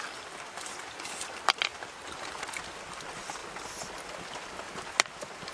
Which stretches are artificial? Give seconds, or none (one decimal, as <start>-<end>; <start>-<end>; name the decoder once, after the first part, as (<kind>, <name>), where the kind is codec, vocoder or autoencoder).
none